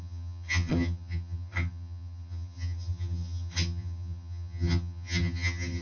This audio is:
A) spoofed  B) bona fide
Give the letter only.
A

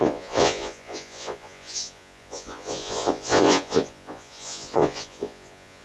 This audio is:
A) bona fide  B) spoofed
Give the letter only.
B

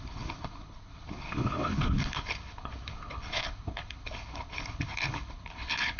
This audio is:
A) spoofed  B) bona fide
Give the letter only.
A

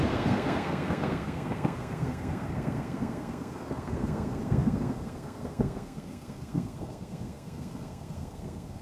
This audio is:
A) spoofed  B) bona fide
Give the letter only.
A